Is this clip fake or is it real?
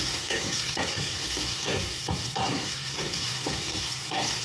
fake